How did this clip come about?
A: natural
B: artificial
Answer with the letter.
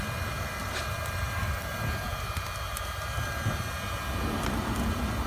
A